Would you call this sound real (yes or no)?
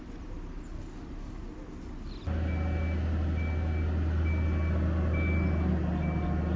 yes